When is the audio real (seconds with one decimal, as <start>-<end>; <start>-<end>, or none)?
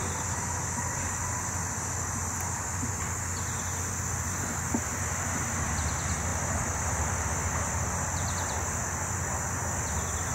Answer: 0.0-10.3